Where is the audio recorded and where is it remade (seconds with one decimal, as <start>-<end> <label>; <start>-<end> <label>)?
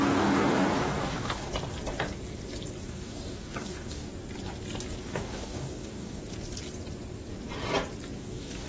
0.0-1.5 remade; 1.5-2.8 recorded; 2.8-4.1 remade; 4.1-5.0 recorded; 5.0-6.2 remade; 6.2-8.2 recorded; 8.2-8.7 remade